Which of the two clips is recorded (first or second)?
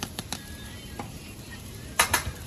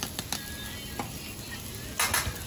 second